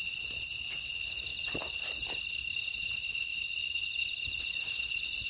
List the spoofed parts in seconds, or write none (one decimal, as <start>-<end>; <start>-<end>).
none